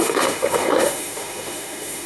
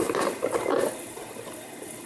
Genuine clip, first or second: second